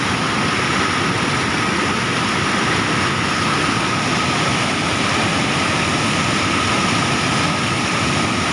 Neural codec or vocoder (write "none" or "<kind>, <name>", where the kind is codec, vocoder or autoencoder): none